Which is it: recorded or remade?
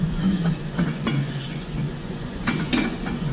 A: remade